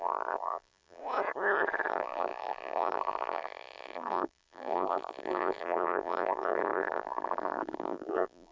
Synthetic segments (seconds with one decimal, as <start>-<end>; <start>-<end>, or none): 0.0-1.0; 1.9-8.5